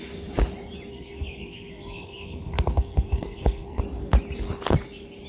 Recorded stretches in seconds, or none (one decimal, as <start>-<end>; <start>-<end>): 0.0-0.9; 3.8-5.3